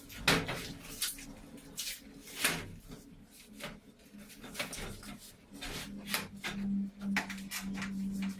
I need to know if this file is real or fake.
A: real